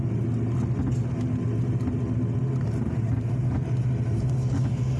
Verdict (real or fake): real